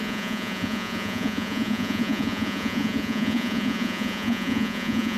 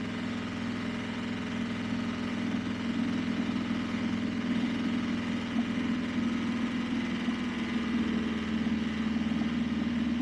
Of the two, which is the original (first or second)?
second